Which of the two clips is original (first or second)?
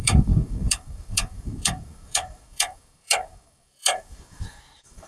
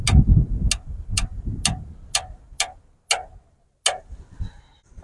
second